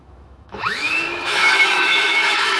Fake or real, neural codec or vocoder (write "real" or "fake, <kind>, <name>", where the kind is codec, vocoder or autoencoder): fake, autoencoder, DAC-VAE